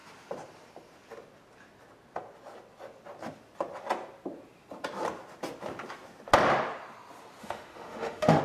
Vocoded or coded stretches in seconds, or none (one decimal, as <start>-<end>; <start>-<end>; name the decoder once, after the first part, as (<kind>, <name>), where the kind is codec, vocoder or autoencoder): 7.4-8.4 (autoencoder, DAC-VAE)